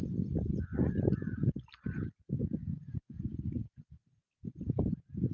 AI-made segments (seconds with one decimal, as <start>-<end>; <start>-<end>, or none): 4.2-5.3

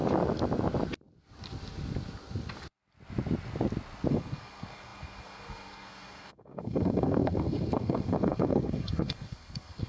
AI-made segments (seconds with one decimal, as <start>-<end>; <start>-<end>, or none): 4.1-9.9

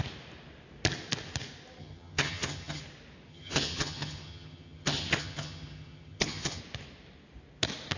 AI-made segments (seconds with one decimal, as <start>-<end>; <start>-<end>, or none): 1.8-2.8; 3.3-6.6

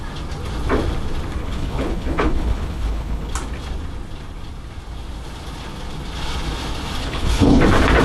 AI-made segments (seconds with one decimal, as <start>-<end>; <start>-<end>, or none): 1.4-3.3; 7.0-7.6

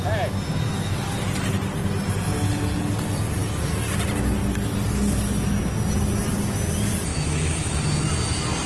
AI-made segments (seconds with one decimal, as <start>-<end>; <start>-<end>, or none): 7.1-7.8

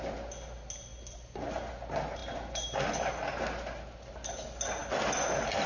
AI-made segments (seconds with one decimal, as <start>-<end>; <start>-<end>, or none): none

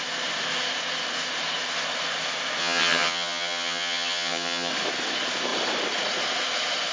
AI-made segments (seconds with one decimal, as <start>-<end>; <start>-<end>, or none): 2.6-4.7